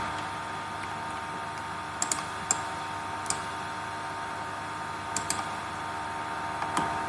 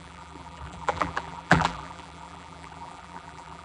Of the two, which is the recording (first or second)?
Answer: first